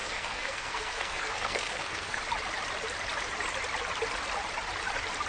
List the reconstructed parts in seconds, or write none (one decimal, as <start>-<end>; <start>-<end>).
0.0-2.2